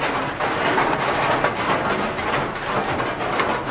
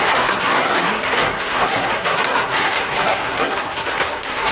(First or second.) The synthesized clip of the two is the second